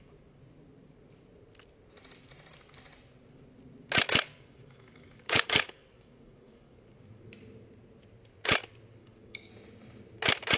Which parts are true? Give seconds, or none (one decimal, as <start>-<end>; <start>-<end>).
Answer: 0.0-4.3; 6.8-9.0; 9.5-10.6